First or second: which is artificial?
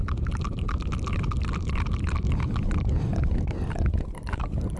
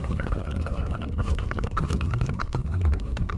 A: second